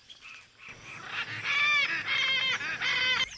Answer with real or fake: real